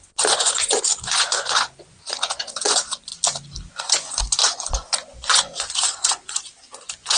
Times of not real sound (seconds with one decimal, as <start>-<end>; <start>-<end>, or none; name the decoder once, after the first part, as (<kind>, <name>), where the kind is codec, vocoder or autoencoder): 0.0-3.1 (vocoder, Vocos); 3.7-7.2